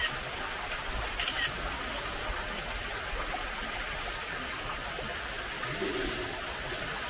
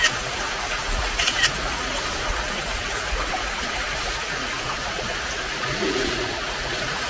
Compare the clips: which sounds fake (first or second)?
second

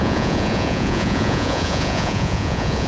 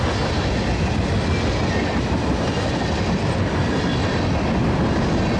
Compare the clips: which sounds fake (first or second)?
first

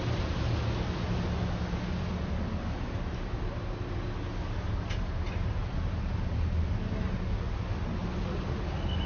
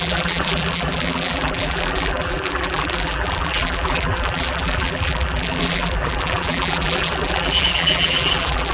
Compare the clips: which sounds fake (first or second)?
second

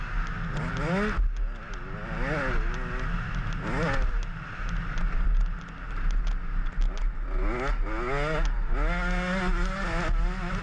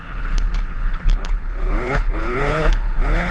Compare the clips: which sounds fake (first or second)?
second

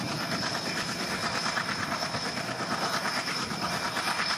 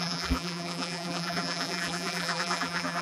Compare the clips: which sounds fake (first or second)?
second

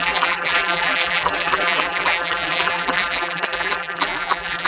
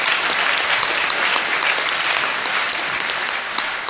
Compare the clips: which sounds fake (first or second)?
first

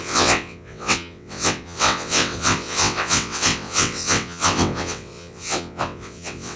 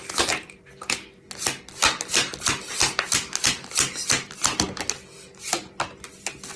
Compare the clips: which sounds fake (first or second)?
first